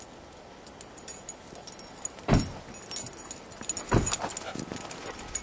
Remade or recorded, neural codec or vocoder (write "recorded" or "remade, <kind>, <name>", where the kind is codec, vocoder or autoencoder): recorded